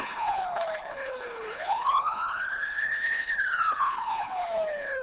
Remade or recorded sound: remade